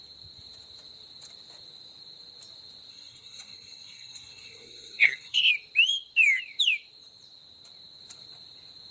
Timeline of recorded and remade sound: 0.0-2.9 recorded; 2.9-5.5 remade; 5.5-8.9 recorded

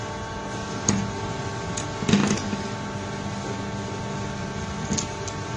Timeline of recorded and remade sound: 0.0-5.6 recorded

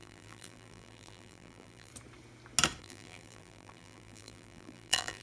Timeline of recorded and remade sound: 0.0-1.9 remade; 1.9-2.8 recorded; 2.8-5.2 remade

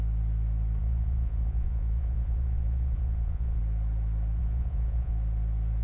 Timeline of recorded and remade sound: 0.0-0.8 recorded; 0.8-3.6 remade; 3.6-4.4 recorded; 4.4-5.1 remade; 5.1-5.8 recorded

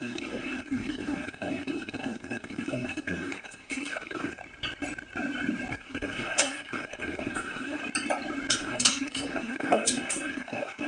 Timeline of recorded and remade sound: 0.0-4.4 remade; 4.4-5.7 recorded; 5.7-7.8 remade; 7.8-8.5 recorded; 8.5-10.9 remade

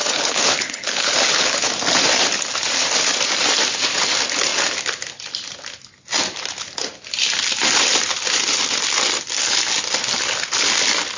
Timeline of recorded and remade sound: 0.0-1.7 remade; 1.7-11.2 recorded

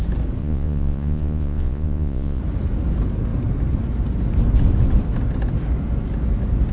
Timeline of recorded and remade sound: 0.0-0.4 recorded; 0.4-2.4 remade; 2.4-6.7 recorded